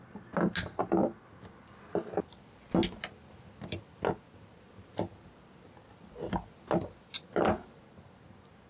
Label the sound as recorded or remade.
recorded